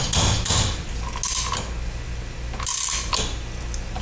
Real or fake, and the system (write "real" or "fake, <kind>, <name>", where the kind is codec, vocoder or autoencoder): real